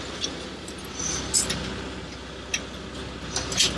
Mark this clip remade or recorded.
recorded